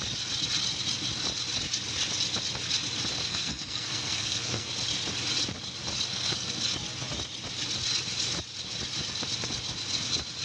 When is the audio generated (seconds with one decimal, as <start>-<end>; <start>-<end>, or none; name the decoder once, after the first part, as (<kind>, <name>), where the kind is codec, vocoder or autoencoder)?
3.2-4.7 (codec, SNAC); 6.1-6.6